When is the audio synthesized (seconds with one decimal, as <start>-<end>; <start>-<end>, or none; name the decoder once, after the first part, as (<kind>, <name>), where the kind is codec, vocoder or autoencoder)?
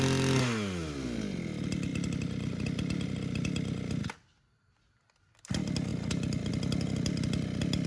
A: none